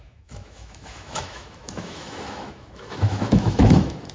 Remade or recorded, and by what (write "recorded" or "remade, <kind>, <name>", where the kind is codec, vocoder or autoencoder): remade, autoencoder, DAC-VAE